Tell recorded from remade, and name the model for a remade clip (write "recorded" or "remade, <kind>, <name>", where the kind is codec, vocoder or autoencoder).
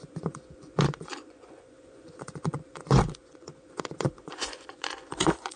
remade, vocoder, Vocos